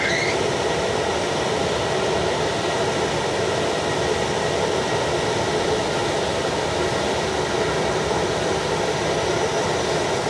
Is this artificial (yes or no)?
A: no